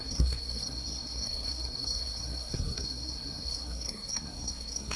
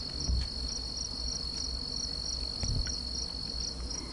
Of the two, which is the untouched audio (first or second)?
second